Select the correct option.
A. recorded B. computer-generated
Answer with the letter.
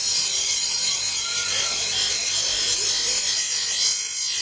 A